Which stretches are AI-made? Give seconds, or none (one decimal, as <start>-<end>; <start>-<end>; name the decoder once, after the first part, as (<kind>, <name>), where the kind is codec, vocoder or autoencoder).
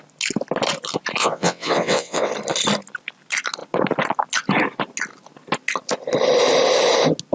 1.2-2.3 (vocoder, WaveNeXt)